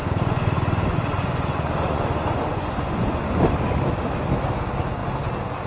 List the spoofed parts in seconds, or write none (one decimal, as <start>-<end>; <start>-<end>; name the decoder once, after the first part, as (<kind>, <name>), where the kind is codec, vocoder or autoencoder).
0.0-3.4 (vocoder, Vocos)

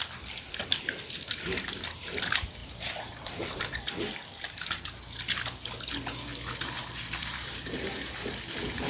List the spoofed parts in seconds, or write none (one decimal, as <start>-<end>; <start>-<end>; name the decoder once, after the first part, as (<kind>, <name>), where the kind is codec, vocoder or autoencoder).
2.6-4.8 (vocoder, BigVGAN v2); 7.2-8.3